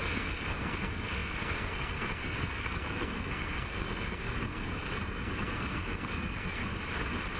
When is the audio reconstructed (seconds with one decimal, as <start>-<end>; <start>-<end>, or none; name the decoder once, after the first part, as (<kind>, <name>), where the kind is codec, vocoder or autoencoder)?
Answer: 0.0-6.7 (codec, SNAC)